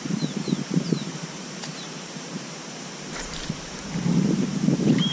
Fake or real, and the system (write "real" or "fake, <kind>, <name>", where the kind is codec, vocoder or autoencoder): fake, vocoder, BigVGAN v2